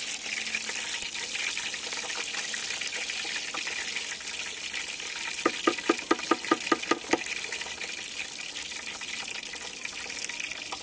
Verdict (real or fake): real